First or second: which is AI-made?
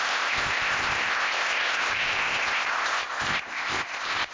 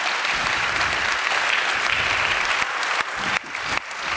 first